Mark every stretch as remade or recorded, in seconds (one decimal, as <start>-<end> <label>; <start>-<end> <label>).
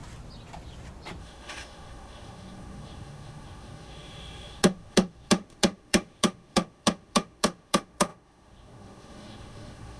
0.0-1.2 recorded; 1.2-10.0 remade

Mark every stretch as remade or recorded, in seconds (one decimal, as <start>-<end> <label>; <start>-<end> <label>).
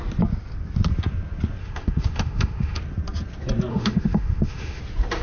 0.0-1.6 recorded; 1.6-2.8 remade; 2.8-3.7 recorded; 3.7-4.8 remade; 4.8-5.2 recorded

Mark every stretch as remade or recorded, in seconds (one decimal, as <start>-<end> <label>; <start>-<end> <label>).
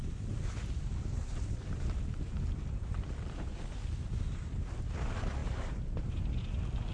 0.0-6.9 recorded